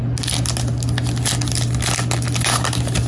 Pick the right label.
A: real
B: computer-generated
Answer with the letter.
A